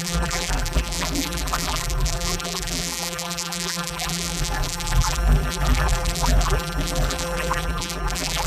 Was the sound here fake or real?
fake